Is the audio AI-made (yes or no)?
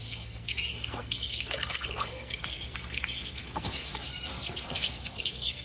yes